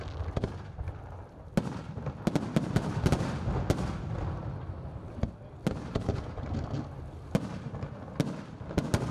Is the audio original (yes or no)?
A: yes